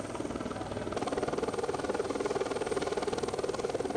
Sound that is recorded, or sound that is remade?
recorded